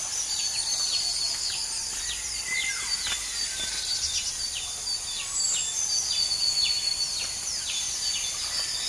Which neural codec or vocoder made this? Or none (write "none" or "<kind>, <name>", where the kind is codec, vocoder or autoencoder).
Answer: none